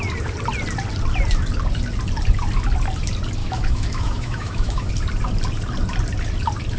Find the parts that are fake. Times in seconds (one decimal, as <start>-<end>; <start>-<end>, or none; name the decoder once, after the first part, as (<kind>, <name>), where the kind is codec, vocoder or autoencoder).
3.4-4.9 (autoencoder, DAC-VAE)